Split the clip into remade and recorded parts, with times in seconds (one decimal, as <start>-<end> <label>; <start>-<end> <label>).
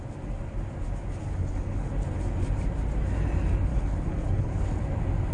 0.0-1.2 recorded; 1.2-1.9 remade; 1.9-3.7 recorded; 3.7-4.8 remade; 4.8-5.3 recorded